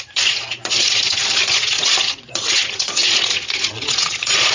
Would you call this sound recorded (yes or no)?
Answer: no